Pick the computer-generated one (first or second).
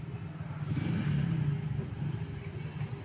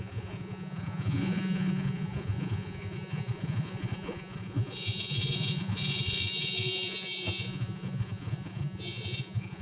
second